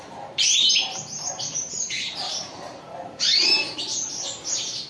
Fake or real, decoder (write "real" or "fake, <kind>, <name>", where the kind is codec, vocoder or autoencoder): fake, vocoder, BigVGAN v2